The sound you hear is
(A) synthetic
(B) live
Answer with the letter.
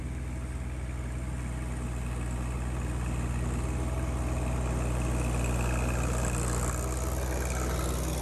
B